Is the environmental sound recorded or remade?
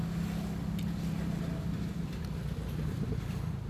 recorded